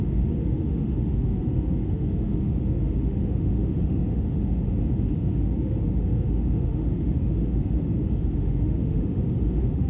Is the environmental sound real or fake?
fake